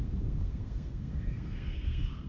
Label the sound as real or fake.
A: fake